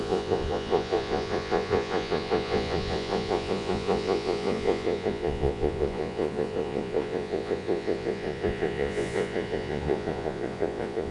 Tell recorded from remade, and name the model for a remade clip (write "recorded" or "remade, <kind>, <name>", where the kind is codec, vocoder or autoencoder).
remade, vocoder, Vocos